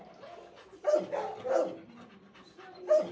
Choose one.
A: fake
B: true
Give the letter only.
B